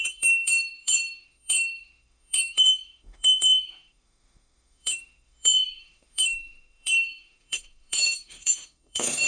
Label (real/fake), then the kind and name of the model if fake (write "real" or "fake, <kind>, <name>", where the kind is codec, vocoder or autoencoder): fake, autoencoder, DAC-VAE